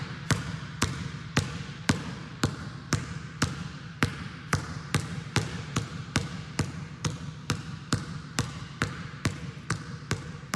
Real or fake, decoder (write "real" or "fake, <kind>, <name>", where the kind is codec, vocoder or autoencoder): fake, vocoder, BigVGAN v2